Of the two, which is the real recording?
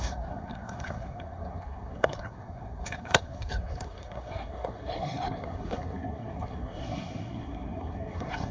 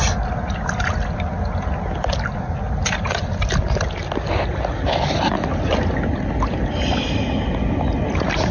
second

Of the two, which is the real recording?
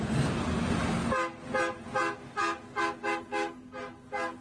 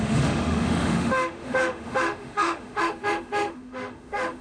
first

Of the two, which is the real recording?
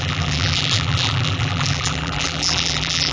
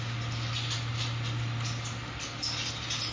second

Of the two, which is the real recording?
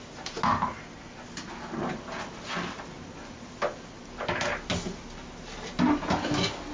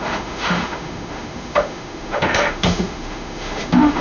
first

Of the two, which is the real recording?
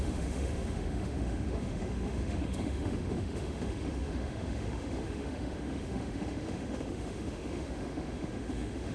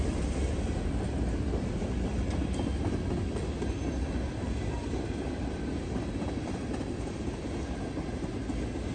second